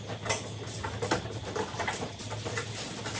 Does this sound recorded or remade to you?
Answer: recorded